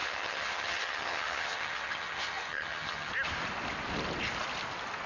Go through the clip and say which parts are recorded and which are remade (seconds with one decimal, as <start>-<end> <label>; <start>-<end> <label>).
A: 0.0-3.1 remade; 3.1-5.1 recorded